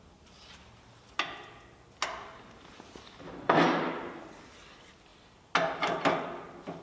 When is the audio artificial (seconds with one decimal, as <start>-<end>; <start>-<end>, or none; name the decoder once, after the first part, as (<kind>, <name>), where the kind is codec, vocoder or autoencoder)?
none